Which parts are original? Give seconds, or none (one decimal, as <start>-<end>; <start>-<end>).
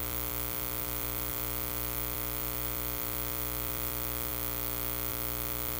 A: 4.3-5.1